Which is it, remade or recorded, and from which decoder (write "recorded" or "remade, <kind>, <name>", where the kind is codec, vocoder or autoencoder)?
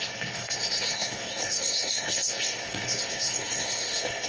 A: remade, codec, SNAC